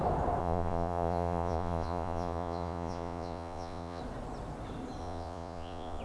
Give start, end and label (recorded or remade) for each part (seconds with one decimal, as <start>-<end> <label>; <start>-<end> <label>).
0.0-0.4 recorded; 0.4-4.0 remade; 4.0-5.0 recorded; 5.0-6.0 remade